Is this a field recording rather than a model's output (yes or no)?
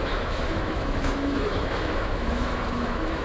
no